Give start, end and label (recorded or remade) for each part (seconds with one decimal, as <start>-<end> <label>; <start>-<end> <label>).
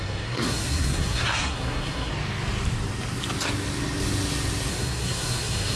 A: 0.0-2.1 remade; 2.1-4.7 recorded; 4.7-5.8 remade